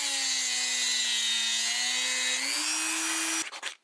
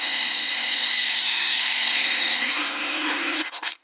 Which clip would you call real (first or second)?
first